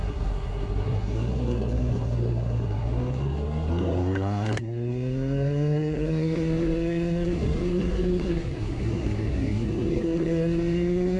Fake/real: fake